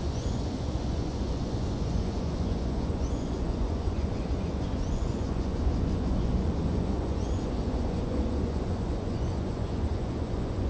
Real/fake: fake